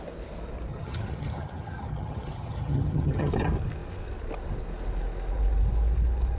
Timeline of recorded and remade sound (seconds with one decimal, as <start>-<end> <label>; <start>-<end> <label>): 0.0-0.7 recorded; 0.7-3.3 remade; 3.3-6.4 recorded